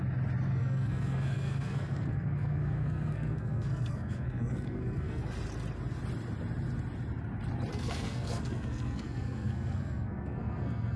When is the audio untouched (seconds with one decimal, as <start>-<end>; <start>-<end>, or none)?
0.0-0.5; 5.2-7.7